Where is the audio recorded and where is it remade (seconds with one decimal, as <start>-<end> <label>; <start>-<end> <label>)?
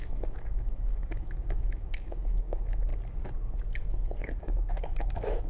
0.0-2.9 remade; 2.9-4.4 recorded; 4.4-5.5 remade